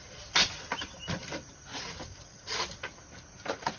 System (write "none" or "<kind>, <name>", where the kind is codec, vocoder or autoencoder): none